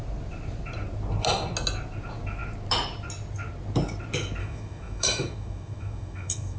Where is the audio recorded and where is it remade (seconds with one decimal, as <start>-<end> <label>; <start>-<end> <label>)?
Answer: 0.0-4.4 recorded; 4.4-6.6 remade